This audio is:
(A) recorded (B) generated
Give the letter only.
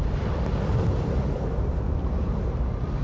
A